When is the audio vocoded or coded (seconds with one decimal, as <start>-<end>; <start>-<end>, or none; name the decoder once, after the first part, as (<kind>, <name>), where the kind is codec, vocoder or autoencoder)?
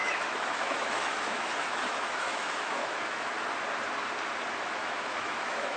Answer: 0.0-3.3 (autoencoder, DAC-VAE); 4.8-5.8